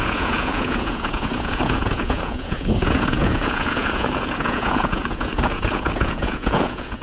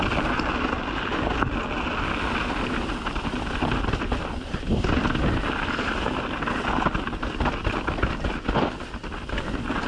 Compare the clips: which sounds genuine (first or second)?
second